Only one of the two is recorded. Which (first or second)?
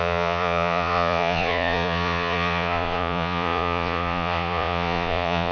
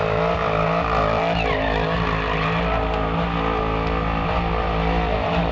second